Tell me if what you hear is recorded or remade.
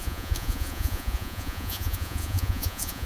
remade